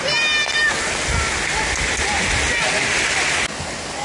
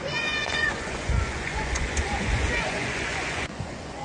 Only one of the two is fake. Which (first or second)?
second